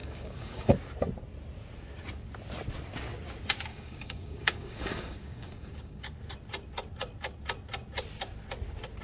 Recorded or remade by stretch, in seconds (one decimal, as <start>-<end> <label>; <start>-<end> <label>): 0.0-0.7 remade; 0.7-3.7 recorded; 3.7-6.0 remade; 6.0-9.0 recorded